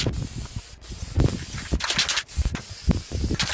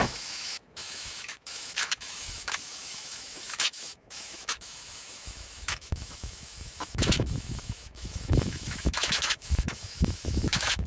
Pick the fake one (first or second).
second